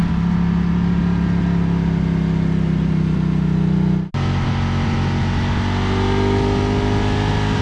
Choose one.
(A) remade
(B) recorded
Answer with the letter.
B